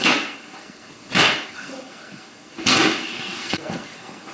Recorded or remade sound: remade